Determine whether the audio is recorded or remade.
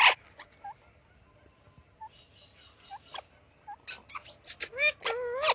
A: recorded